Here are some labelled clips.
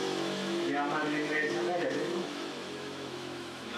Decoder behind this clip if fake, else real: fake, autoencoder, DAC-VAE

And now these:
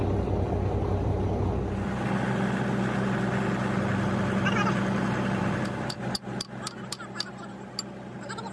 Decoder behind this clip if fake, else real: real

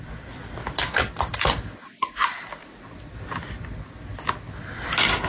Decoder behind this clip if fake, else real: real